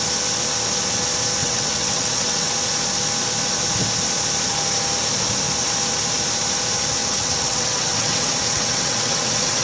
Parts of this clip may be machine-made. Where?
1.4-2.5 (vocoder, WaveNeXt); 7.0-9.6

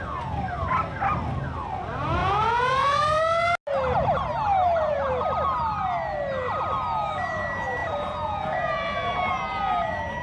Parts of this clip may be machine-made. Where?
2.2-3.2 (vocoder, Vocos); 4.6-5.1; 7.8-9.1

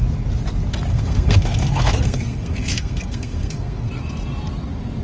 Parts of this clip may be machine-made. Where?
0.9-3.9 (codec, SNAC)